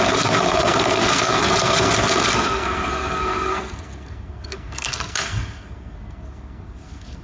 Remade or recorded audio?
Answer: remade